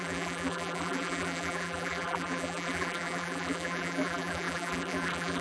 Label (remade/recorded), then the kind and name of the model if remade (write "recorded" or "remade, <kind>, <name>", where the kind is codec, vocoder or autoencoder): remade, vocoder, BigVGAN v2